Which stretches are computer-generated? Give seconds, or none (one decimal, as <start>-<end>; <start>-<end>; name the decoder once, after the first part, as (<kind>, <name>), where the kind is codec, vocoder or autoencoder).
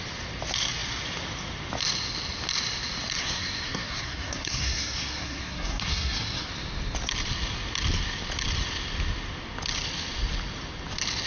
3.2-6.5 (codec, SNAC)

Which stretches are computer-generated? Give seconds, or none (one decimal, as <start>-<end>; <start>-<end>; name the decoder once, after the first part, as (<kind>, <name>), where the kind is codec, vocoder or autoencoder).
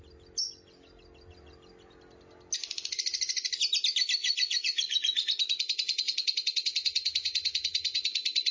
4.2-8.5 (vocoder, Vocos)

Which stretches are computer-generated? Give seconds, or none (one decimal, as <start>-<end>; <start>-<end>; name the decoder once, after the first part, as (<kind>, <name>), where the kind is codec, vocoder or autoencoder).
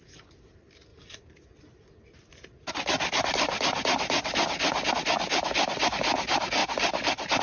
none